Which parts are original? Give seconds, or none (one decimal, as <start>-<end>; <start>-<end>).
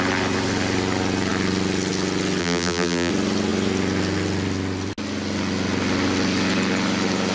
0.0-2.4; 3.1-7.3